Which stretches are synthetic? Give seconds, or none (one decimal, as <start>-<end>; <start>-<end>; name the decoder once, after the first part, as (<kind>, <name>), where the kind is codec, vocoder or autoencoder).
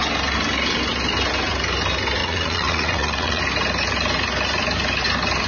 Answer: 2.2-3.4 (vocoder, Vocos)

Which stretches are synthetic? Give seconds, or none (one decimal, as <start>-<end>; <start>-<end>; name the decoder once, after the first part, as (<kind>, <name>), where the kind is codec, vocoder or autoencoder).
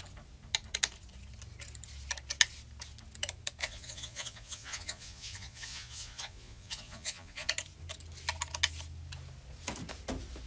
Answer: 3.6-7.5 (vocoder, Vocos)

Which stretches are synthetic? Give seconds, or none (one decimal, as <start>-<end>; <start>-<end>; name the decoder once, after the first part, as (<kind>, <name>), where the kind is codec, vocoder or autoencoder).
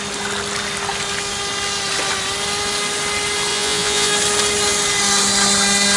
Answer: 3.5-4.1 (vocoder, Vocos)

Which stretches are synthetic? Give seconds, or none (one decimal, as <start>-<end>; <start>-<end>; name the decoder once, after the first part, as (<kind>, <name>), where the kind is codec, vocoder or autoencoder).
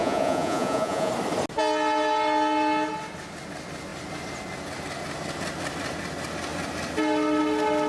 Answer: 0.0-1.1 (vocoder, Vocos)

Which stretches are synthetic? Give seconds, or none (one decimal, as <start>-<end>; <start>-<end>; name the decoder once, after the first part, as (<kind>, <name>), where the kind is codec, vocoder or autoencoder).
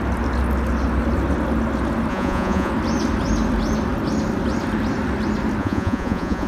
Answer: 2.1-2.7 (vocoder, Vocos); 5.6-6.5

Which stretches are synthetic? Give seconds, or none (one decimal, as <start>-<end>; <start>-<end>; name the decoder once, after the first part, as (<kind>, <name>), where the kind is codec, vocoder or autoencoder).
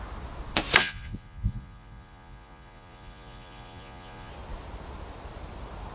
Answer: 0.8-4.3 (vocoder, Vocos)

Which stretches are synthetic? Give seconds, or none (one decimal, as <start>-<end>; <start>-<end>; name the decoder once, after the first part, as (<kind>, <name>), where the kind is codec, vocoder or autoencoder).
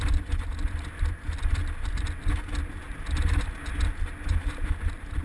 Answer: none